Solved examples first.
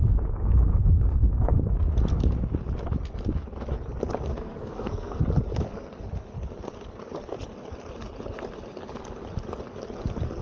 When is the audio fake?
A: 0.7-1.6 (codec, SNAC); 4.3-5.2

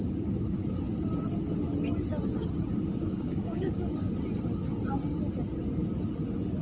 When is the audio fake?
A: 2.9-4.1 (codec, DAC)